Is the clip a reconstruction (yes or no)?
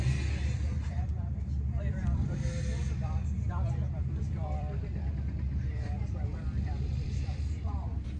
yes